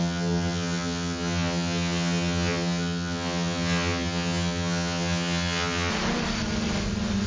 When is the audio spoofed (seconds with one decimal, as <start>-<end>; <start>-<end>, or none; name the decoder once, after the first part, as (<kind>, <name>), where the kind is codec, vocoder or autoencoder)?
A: 0.0-5.9 (vocoder, HiFi-GAN)